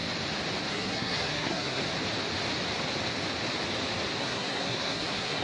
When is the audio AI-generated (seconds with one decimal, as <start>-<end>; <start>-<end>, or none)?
0.7-1.8; 4.2-5.4